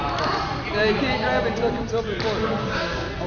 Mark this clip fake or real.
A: real